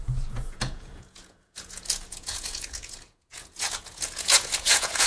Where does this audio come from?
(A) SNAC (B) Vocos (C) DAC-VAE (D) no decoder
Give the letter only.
B